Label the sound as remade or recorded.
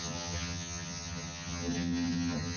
remade